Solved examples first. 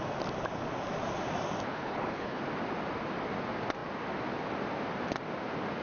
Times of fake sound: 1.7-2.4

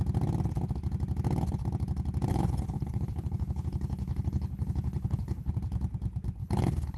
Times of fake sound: 2.3-5.5; 6.4-7.0